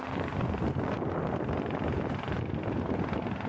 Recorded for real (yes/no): yes